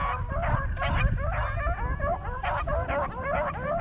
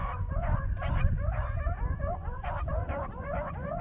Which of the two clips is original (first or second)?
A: first